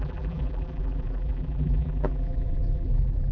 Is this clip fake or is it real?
fake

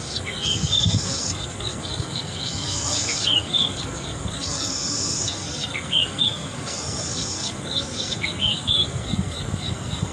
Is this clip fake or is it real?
fake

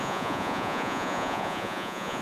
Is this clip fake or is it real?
fake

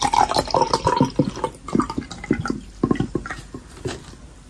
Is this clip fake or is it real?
real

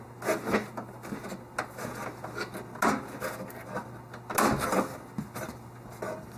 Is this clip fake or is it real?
real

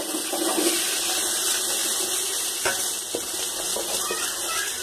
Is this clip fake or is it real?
real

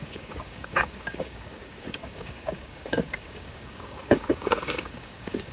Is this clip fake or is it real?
fake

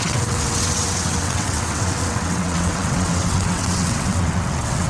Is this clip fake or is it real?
fake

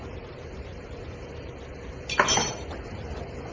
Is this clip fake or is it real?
real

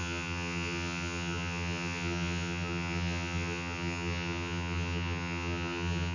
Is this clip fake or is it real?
fake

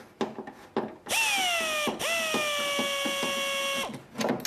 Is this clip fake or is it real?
real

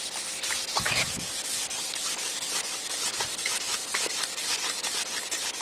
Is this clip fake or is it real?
real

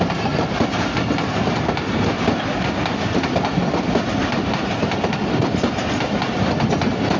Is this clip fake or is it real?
real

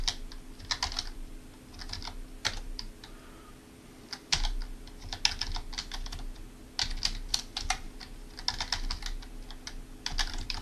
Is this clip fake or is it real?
real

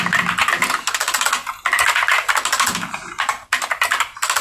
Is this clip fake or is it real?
real